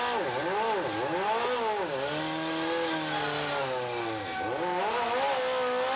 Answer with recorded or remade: recorded